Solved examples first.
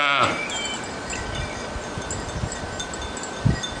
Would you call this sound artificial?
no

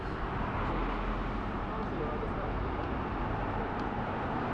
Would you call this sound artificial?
no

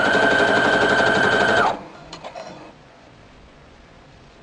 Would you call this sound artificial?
yes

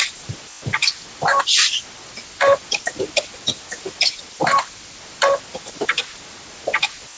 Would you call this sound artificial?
no